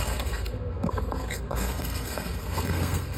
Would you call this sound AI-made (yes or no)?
yes